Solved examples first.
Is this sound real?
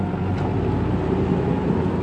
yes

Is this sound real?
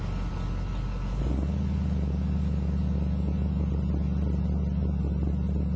yes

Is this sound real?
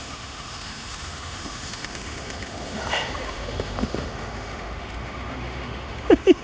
no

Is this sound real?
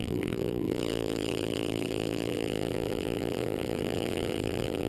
no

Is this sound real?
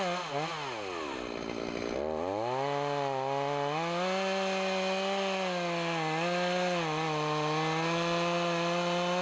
yes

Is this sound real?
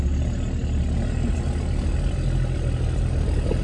yes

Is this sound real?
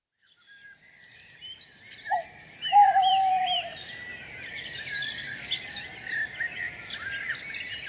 yes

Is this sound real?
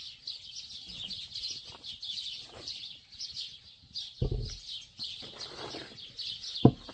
yes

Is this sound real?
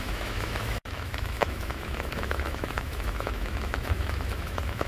no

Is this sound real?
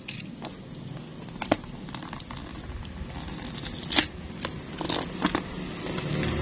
yes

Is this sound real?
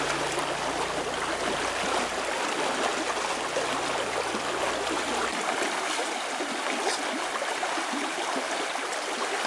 yes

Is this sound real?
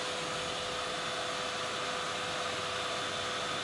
yes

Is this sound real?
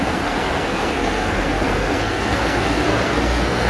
no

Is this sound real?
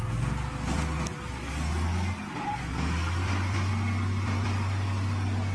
yes